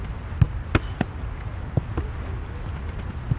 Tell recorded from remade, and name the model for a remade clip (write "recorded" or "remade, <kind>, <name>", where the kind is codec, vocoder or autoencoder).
recorded